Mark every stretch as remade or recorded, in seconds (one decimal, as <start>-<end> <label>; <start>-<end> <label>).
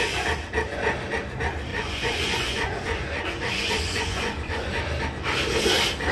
0.0-1.7 recorded; 1.7-4.7 remade; 4.7-6.1 recorded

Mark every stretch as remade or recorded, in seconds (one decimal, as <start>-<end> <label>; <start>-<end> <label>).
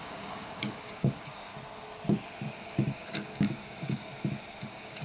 0.0-1.5 remade; 1.5-2.6 recorded; 2.6-4.1 remade; 4.1-4.6 recorded; 4.6-5.0 remade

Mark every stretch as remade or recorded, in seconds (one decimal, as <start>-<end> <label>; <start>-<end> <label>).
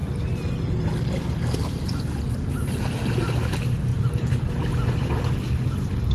0.0-3.9 recorded; 3.9-4.5 remade; 4.5-6.1 recorded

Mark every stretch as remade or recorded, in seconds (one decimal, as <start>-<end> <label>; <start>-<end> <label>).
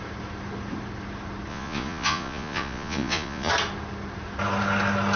0.0-1.5 recorded; 1.5-3.5 remade; 3.5-5.2 recorded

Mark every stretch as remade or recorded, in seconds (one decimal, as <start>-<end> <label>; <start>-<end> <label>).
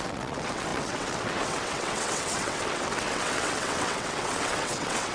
0.0-5.1 remade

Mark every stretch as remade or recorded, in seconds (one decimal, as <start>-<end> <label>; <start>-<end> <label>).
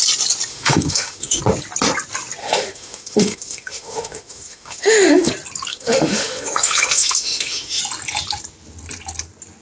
0.0-0.5 recorded; 0.5-1.4 remade; 1.4-2.4 recorded; 2.4-5.3 remade; 5.3-5.7 recorded; 5.7-7.8 remade; 7.8-9.6 recorded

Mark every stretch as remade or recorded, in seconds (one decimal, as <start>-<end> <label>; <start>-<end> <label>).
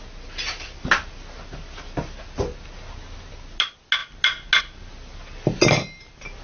0.0-6.4 recorded